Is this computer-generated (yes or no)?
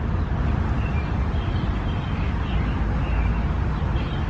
no